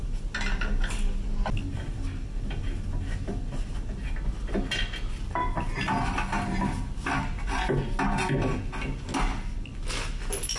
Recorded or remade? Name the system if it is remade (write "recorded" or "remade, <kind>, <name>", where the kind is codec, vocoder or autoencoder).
recorded